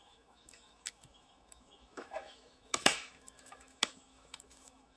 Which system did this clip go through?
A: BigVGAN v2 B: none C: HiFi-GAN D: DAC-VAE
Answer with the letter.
D